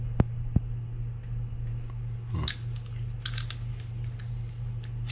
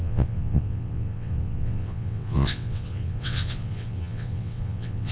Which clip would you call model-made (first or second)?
second